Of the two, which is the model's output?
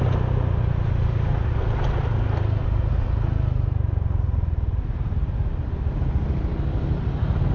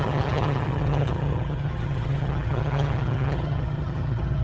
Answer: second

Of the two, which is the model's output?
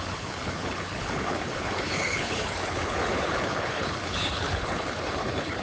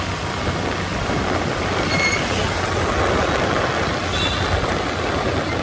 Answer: first